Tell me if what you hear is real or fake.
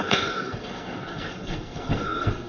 fake